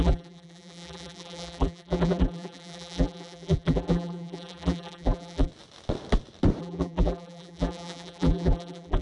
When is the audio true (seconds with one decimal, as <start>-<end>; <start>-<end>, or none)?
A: 5.5-6.6